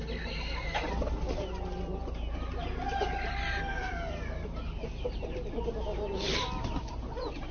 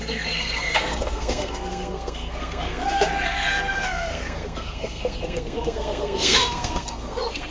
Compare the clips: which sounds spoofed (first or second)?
second